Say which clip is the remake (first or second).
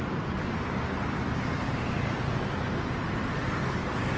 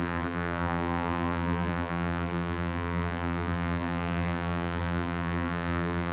second